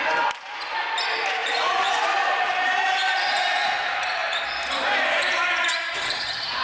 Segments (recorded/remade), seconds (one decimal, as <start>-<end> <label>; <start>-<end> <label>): 0.0-1.4 recorded; 1.4-2.7 remade; 2.7-4.2 recorded; 4.2-6.6 remade